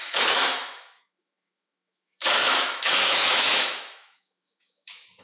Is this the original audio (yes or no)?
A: no